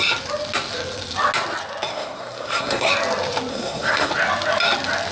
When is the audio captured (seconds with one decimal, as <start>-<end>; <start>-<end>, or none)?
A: 0.0-1.9; 2.9-3.5; 4.1-5.1